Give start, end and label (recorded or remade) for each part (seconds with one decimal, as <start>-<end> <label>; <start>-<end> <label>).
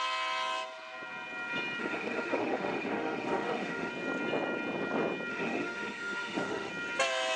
0.0-1.8 recorded; 1.8-3.9 remade; 3.9-5.3 recorded; 5.3-6.7 remade; 6.7-7.4 recorded